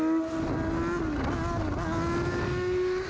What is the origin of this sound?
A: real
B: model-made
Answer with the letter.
A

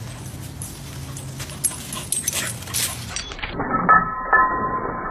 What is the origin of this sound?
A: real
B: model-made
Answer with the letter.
A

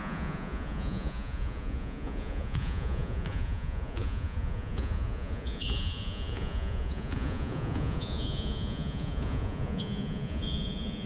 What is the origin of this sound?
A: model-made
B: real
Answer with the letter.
A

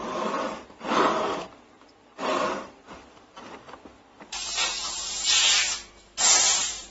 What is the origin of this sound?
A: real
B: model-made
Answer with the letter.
B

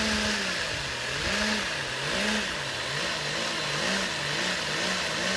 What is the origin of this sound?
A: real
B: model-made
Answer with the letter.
A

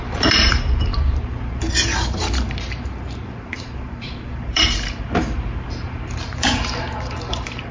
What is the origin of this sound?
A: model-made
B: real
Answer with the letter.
A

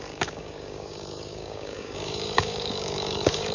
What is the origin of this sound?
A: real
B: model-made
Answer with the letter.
B